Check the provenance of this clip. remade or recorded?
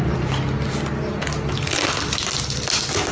recorded